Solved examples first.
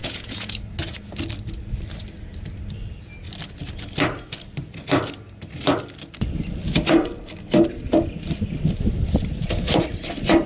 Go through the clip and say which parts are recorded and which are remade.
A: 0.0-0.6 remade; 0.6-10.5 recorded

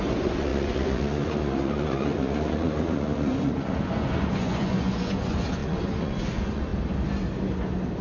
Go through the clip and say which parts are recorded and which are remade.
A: 0.0-6.7 remade; 6.7-8.0 recorded

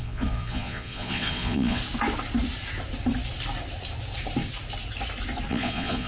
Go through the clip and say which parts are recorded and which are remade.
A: 0.0-1.8 remade; 1.8-5.5 recorded; 5.5-6.1 remade

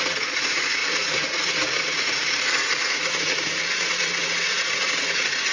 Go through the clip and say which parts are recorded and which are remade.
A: 0.0-5.5 remade

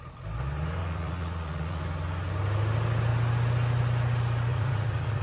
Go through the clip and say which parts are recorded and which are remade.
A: 0.0-0.8 recorded; 0.8-1.8 remade; 1.8-4.5 recorded; 4.5-5.2 remade